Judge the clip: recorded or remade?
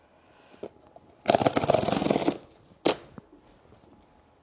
recorded